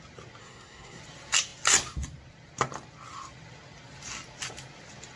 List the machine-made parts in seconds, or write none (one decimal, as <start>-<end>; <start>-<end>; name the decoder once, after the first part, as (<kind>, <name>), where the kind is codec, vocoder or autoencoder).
0.4-1.0 (codec, SNAC)